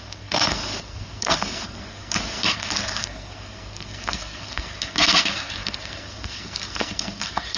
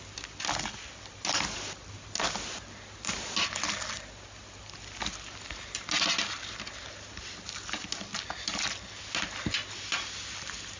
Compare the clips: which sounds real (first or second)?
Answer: second